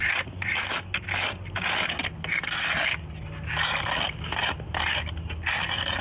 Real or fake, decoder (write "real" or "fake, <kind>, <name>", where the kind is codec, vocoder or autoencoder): real